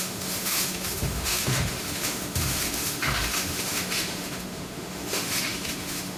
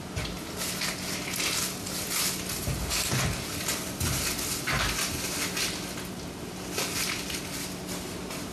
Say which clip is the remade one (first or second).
first